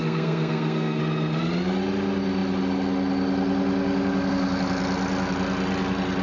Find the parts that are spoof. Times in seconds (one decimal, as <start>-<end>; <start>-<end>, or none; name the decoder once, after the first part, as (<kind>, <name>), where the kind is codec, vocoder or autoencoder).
0.0-1.0 (codec, SNAC)